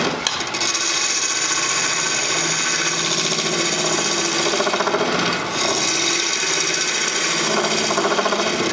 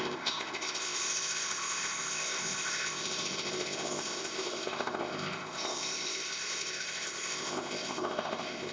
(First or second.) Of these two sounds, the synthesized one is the second